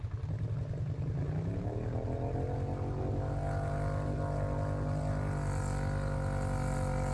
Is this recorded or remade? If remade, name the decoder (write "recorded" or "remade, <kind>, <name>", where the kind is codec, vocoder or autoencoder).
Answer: recorded